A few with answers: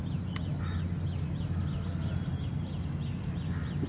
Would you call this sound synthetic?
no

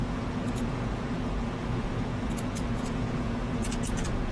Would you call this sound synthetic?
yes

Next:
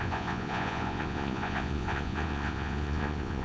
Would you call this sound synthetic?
yes